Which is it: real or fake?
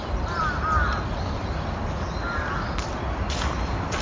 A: fake